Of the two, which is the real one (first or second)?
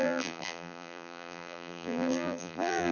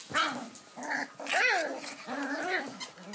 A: second